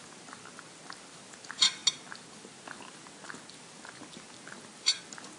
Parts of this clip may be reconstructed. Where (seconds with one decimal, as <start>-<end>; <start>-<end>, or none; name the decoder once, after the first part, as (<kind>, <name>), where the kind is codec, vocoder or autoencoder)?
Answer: none